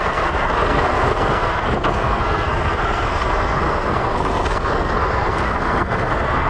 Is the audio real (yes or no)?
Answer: no